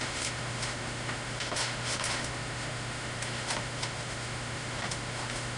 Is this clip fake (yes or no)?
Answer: yes